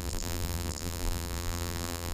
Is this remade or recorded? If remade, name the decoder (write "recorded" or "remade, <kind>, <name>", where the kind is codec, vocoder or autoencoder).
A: remade, vocoder, BigVGAN v2